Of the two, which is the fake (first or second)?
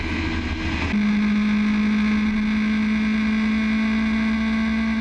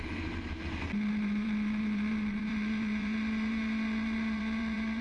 second